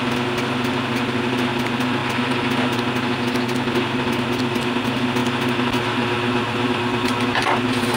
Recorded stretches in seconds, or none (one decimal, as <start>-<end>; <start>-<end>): 0.0-5.2; 6.8-8.0